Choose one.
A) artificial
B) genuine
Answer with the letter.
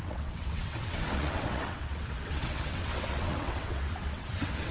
A